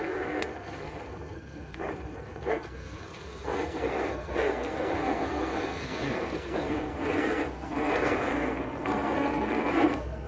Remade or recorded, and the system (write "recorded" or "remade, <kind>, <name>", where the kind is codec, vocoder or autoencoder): remade, codec, SNAC